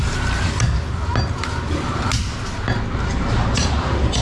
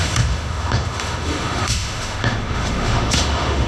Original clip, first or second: first